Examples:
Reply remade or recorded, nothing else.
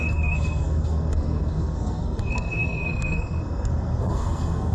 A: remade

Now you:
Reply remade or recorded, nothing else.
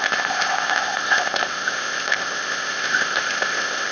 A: remade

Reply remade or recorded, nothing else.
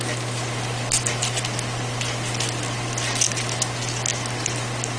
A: recorded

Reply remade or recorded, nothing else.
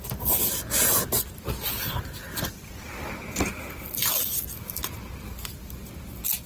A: recorded